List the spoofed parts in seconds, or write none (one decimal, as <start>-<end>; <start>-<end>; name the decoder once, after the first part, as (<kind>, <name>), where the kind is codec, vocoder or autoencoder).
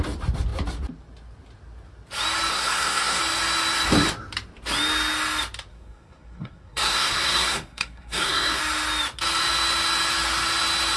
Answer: 2.5-3.2 (codec, SNAC); 5.7-8.6